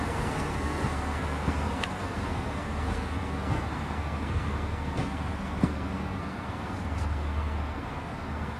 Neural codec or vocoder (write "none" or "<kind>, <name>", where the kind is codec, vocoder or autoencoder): codec, SNAC